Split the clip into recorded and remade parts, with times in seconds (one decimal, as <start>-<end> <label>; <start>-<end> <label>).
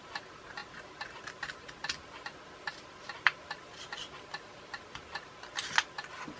0.0-6.4 recorded